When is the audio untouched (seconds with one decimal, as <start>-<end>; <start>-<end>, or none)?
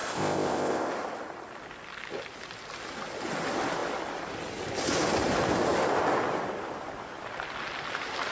0.9-8.3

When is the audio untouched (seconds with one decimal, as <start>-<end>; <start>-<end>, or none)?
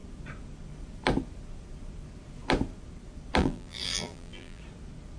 0.0-3.4; 4.6-5.2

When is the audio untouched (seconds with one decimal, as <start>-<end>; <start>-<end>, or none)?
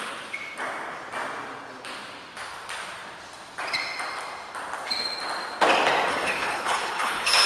0.0-6.1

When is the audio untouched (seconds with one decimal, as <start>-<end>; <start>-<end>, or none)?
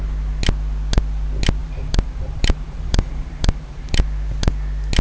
0.0-1.6; 4.0-5.0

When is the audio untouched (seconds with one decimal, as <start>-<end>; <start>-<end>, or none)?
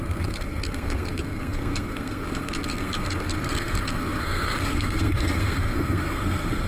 none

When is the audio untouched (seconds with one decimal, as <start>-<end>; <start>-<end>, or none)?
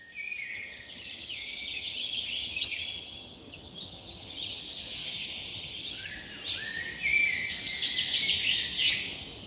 0.0-0.5; 4.6-5.5; 6.1-9.5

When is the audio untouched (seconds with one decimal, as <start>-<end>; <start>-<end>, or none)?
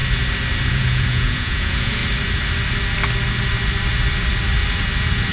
0.0-0.7; 2.0-5.3